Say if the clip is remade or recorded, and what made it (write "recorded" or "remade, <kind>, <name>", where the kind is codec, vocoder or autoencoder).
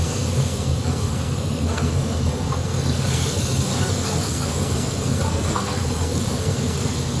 remade, codec, SNAC